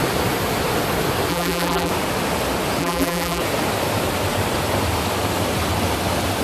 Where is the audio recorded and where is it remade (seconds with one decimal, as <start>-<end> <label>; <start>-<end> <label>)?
0.0-1.3 recorded; 1.3-1.9 remade; 1.9-2.8 recorded; 2.8-3.4 remade; 3.4-6.4 recorded